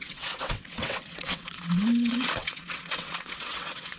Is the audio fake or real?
fake